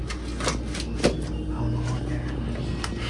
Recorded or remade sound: recorded